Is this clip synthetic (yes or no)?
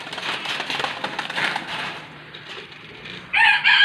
yes